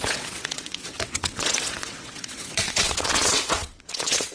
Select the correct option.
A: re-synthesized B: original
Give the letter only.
A